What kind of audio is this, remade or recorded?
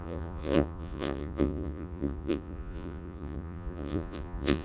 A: remade